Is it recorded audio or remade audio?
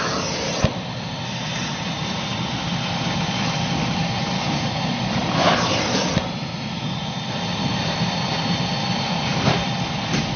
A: remade